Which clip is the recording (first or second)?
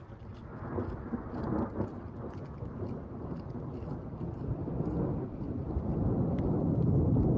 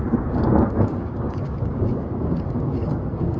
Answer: first